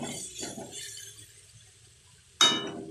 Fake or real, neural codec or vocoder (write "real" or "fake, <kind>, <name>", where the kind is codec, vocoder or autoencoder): real